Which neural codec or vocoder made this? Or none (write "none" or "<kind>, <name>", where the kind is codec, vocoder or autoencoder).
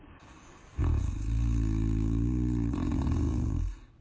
none